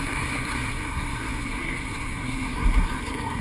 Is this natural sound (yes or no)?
no